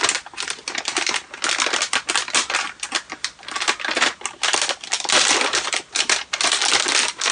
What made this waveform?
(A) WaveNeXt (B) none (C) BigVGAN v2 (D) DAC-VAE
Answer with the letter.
B